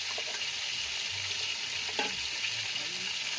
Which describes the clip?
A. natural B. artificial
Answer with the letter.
A